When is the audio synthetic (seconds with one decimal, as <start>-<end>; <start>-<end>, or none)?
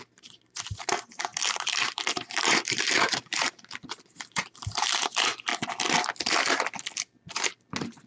0.0-5.5